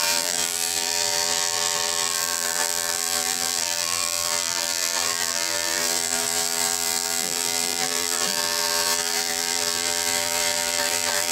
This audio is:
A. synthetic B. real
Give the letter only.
A